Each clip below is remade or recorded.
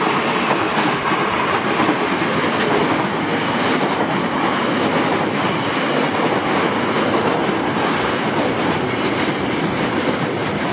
recorded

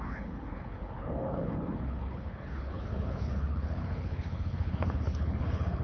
remade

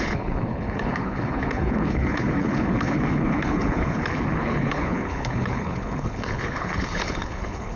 remade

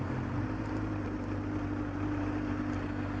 recorded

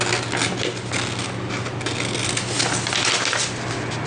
recorded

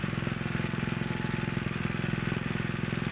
recorded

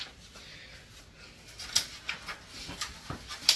recorded